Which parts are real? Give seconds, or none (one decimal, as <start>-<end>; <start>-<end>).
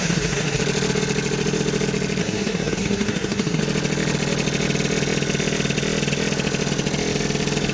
0.6-2.2; 3.6-7.7